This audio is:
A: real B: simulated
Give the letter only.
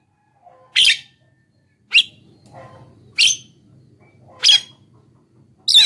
A